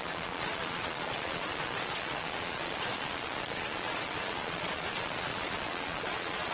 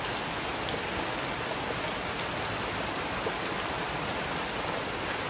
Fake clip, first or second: first